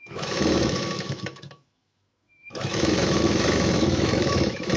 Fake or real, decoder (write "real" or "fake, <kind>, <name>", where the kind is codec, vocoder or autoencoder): fake, autoencoder, DAC-VAE